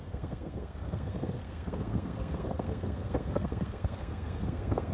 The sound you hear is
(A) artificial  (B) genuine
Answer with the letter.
A